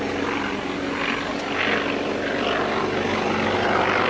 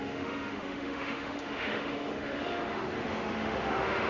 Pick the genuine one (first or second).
first